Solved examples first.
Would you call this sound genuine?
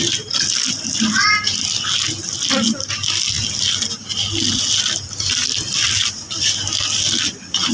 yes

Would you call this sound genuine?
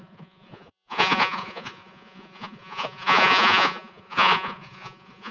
no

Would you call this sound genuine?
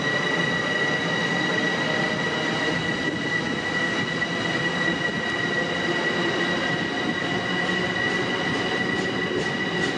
yes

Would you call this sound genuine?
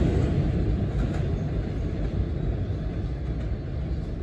yes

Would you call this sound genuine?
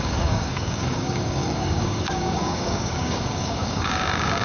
no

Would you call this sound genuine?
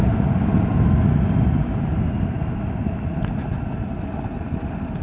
yes